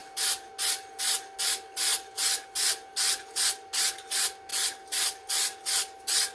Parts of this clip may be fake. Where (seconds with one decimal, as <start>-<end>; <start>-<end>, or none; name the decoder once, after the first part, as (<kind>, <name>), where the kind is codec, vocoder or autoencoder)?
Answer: 4.5-5.6 (vocoder, BigVGAN v2)